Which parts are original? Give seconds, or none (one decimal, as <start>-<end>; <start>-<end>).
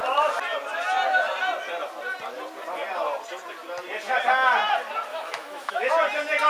0.0-5.1; 5.9-6.5